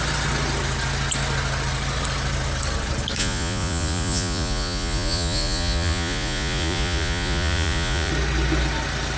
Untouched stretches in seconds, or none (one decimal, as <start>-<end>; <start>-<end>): 0.0-3.2; 8.1-9.2